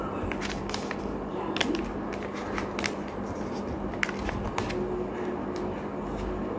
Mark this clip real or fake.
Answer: real